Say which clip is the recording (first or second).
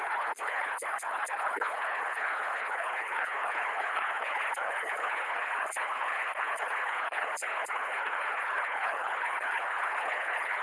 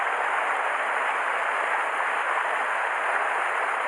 second